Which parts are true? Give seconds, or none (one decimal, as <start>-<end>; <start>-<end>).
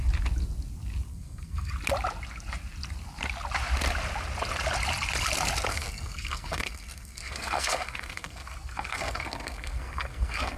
0.0-1.1; 1.7-5.7